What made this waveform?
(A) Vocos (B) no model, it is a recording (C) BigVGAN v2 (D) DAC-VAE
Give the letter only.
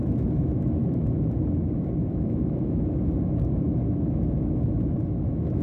D